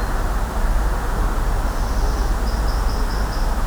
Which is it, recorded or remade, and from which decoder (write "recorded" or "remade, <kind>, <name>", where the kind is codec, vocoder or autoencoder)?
recorded